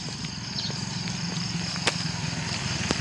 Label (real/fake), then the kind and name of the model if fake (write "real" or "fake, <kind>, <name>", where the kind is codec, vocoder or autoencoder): real